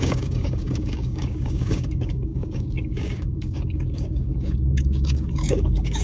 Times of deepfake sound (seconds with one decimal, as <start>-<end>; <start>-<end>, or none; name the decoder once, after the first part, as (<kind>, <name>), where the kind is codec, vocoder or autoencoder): 0.0-6.0 (codec, DAC)